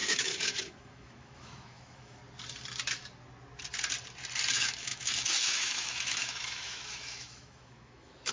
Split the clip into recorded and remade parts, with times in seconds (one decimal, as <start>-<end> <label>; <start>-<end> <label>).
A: 0.0-2.2 remade; 2.2-4.5 recorded; 4.5-8.3 remade